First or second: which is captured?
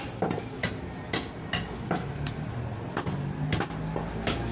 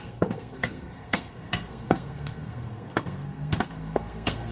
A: first